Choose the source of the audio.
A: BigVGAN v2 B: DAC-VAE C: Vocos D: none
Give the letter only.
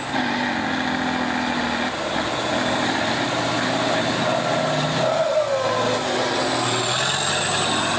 D